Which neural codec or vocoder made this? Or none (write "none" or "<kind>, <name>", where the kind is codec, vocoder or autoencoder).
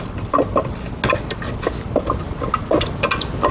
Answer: none